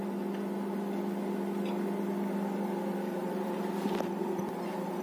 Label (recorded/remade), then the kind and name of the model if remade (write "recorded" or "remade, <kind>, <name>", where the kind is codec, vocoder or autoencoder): remade, vocoder, BigVGAN v2